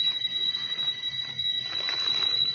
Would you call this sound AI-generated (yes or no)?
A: no